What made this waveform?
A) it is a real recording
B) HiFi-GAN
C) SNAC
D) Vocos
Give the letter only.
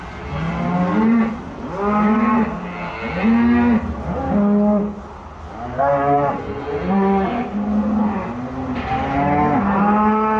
A